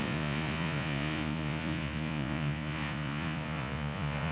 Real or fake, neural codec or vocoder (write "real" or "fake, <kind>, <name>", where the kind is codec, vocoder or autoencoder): fake, vocoder, Vocos